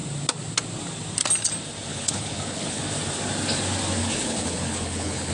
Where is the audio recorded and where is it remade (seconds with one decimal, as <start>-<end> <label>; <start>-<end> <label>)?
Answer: 0.0-1.9 recorded; 1.9-2.8 remade; 2.8-4.0 recorded; 4.0-5.3 remade